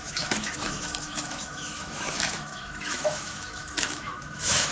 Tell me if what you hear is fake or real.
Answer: fake